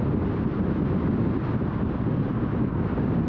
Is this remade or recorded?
remade